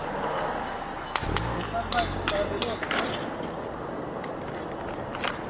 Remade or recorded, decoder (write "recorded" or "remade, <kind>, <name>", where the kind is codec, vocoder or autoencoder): recorded